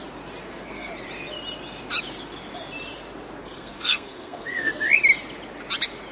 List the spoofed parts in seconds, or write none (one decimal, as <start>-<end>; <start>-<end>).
0.4-0.9; 3.4-4.7